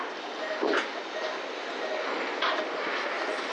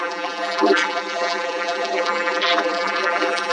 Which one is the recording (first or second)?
first